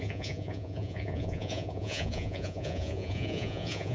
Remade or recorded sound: remade